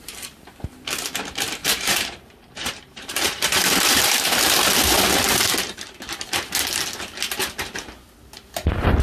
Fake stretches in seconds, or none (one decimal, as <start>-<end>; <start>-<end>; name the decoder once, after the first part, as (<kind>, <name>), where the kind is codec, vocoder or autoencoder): 1.6-4.2 (vocoder, BigVGAN v2)